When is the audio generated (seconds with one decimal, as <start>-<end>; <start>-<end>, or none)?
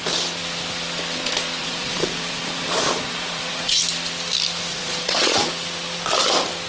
1.6-3.8; 4.7-5.5